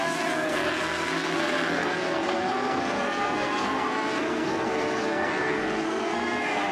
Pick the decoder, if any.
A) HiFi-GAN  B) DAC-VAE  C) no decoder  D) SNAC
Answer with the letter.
D